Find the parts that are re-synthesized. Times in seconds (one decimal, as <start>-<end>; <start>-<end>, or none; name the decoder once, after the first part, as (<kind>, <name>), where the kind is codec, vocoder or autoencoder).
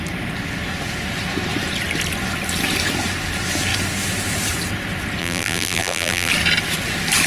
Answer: 5.2-6.3 (vocoder, BigVGAN v2)